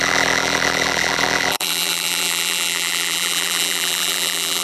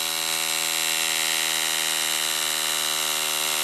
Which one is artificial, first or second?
first